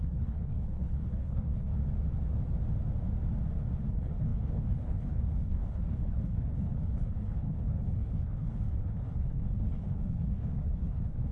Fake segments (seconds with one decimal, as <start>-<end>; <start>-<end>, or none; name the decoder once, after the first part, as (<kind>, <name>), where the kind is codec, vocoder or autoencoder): 0.0-1.8 (codec, HILCodec); 3.9-11.3